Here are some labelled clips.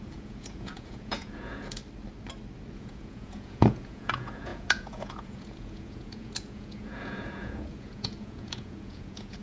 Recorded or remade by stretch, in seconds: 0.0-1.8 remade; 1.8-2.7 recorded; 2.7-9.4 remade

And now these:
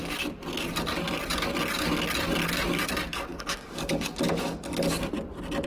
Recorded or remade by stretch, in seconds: 0.0-3.3 recorded; 3.3-5.1 remade; 5.1-5.7 recorded

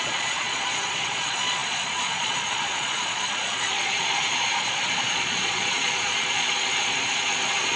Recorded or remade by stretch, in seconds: 0.0-7.8 remade

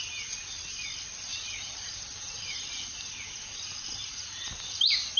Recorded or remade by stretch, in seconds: 0.0-1.3 recorded; 1.3-3.1 remade; 3.1-4.0 recorded; 4.0-4.8 remade; 4.8-5.2 recorded

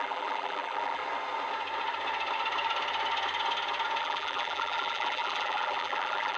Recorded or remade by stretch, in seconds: 0.0-1.0 remade; 1.0-4.0 recorded; 4.0-6.4 remade

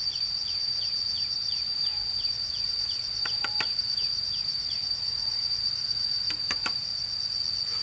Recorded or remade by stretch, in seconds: 0.0-6.9 remade; 6.9-7.8 recorded